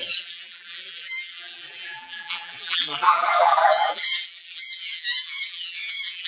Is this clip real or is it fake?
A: fake